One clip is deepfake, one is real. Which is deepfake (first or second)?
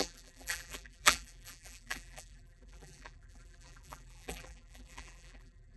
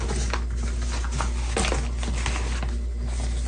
first